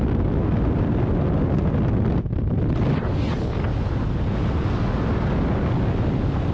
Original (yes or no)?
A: yes